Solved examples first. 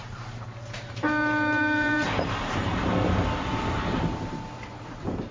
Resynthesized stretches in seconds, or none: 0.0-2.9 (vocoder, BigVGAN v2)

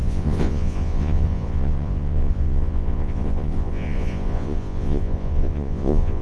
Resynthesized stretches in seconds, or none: 0.0-6.2 (vocoder, Vocos)

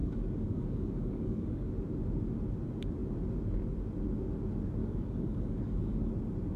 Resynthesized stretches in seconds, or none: 0.0-1.7 (codec, DAC); 4.8-6.1

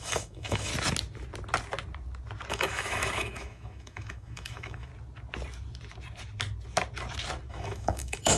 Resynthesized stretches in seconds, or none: 0.0-0.7 (autoencoder, DAC-VAE); 2.5-4.9; 7.5-8.4

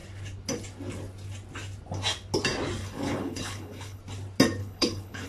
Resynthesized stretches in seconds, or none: 2.8-4.0 (codec, HILCodec); 4.6-5.3

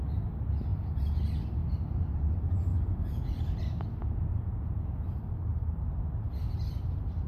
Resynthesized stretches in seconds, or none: 0.7-1.2 (vocoder, Vocos); 2.7-3.4; 4.0-5.2

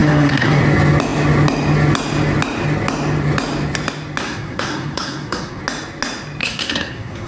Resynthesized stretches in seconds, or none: 0.0-0.6 (codec, SNAC); 4.2-5.6; 6.4-7.3

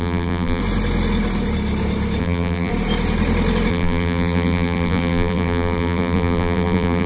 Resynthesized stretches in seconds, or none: 0.0-0.6 (vocoder, BigVGAN v2); 2.2-2.7; 3.7-7.1